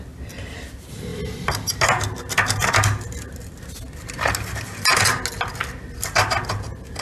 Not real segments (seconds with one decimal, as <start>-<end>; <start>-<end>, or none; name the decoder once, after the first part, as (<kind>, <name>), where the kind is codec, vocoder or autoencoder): none